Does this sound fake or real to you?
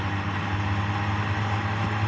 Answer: real